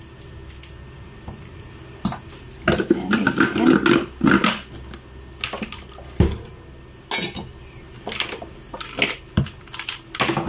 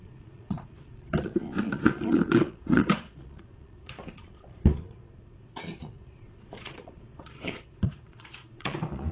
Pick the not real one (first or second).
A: second